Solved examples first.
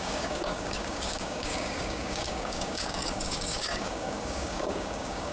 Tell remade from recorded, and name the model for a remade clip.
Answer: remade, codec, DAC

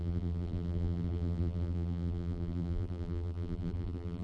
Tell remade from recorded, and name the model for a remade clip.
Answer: remade, vocoder, BigVGAN v2